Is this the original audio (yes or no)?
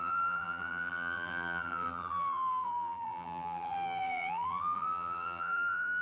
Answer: no